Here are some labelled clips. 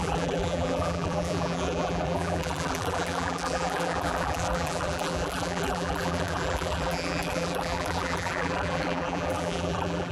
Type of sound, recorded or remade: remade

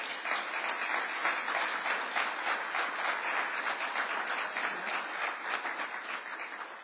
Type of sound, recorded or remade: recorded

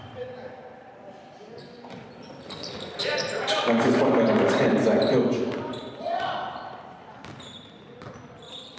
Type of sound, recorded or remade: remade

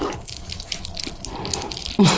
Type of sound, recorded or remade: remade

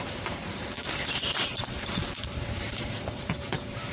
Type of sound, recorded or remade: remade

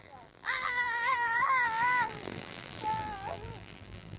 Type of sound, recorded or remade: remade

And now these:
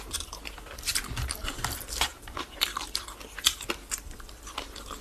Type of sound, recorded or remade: remade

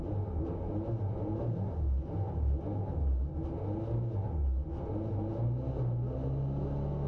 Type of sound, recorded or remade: recorded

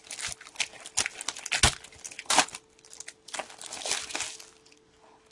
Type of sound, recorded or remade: recorded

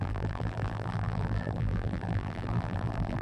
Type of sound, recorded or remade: remade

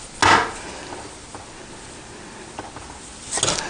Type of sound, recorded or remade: recorded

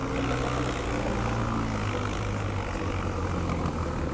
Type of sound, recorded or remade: recorded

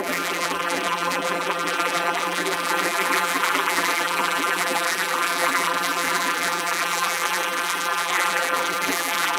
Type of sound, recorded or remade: remade